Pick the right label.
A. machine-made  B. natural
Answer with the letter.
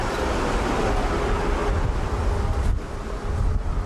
B